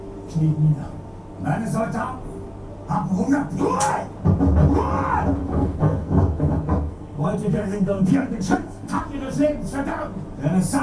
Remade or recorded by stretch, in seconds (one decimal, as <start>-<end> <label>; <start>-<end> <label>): 0.0-5.4 recorded; 5.4-9.0 remade; 9.0-10.8 recorded